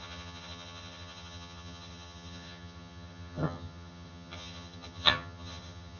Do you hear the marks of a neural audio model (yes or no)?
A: yes